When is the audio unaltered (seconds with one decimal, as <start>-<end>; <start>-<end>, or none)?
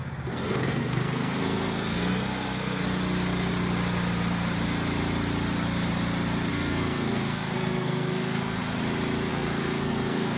2.8-6.5; 8.6-9.3